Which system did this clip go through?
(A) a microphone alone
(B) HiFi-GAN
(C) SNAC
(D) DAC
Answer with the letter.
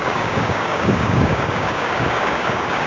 D